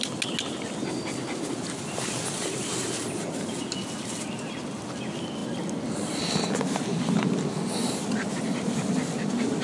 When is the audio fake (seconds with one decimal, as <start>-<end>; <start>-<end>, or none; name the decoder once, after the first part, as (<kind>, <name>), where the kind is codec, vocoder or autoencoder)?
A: none